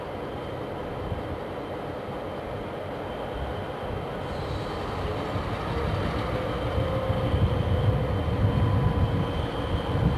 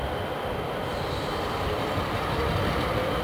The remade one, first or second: second